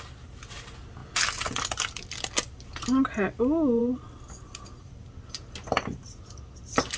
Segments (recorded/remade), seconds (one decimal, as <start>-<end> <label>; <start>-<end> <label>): 0.0-7.0 recorded